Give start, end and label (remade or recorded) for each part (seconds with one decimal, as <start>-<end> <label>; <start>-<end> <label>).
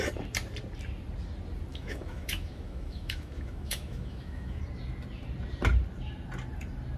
0.0-1.7 recorded; 1.7-4.6 remade; 4.6-7.0 recorded